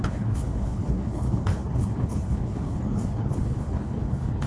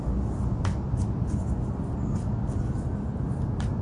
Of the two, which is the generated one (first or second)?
first